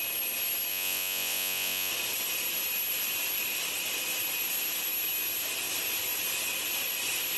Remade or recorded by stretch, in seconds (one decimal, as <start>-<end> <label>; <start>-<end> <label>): 0.0-0.7 recorded; 0.7-1.9 remade; 1.9-7.4 recorded